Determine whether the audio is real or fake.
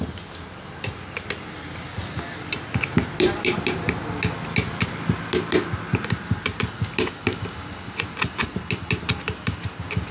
real